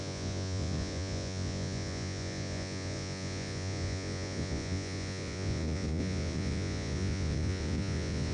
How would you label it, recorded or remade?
remade